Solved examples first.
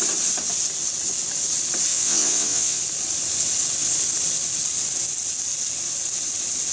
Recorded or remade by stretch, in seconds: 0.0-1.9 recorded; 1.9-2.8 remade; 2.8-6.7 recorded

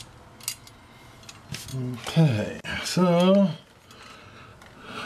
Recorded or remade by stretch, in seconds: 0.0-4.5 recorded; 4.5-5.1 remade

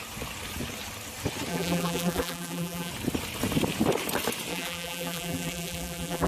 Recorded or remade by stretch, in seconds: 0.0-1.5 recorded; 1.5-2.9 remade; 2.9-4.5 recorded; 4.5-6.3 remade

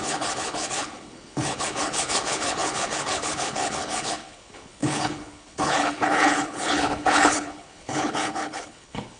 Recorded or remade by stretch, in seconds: 0.0-9.2 remade

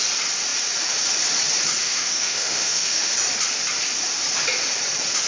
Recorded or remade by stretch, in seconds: 0.0-1.8 recorded; 1.8-3.1 remade; 3.1-5.3 recorded

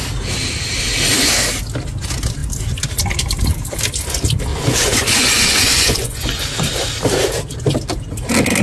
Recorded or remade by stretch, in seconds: 0.0-4.5 recorded; 4.5-6.4 remade; 6.4-8.6 recorded

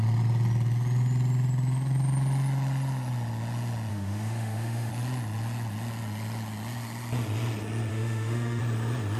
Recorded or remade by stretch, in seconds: 0.0-3.9 recorded; 3.9-4.9 remade; 4.9-7.9 recorded; 7.9-8.6 remade; 8.6-9.2 recorded